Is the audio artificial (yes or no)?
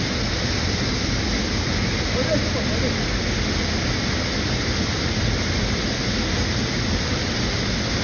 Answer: no